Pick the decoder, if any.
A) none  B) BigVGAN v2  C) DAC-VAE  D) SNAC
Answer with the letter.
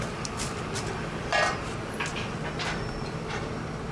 B